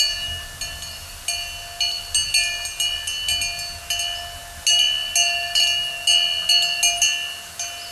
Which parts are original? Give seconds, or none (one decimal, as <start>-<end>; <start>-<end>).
0.0-7.9